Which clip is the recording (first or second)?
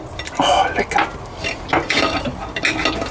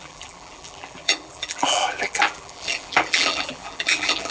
first